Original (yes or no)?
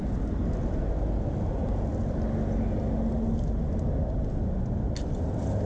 yes